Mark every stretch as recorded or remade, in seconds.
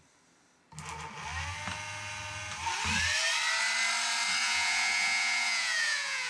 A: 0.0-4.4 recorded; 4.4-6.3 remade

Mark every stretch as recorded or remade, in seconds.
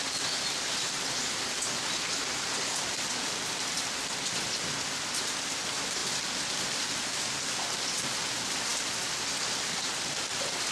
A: 0.0-10.7 recorded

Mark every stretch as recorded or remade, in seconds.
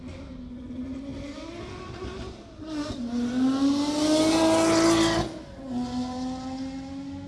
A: 0.0-7.3 recorded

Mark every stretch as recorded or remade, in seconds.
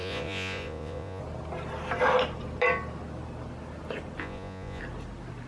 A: 0.0-1.2 remade; 1.2-4.2 recorded; 4.2-4.8 remade; 4.8-5.5 recorded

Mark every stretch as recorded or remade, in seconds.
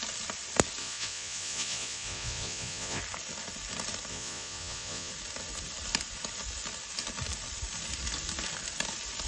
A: 0.0-0.8 recorded; 0.8-3.0 remade; 3.0-4.1 recorded; 4.1-5.1 remade; 5.1-9.3 recorded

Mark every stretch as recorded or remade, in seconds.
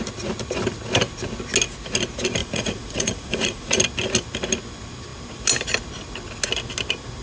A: 0.0-2.4 recorded; 2.4-3.8 remade; 3.8-7.2 recorded